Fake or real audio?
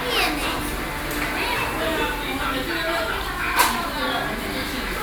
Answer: real